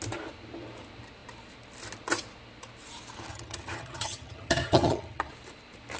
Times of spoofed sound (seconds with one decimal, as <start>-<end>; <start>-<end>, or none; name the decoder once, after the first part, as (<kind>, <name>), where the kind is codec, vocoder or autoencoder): 3.3-5.3 (vocoder, HiFi-GAN)